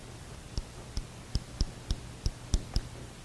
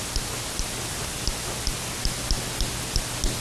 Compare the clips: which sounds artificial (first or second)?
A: first